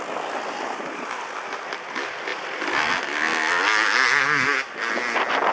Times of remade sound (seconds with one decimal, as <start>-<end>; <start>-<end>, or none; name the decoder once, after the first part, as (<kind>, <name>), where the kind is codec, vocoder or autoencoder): none